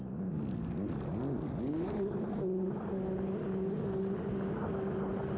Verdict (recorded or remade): recorded